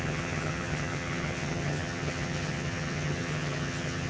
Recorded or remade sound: remade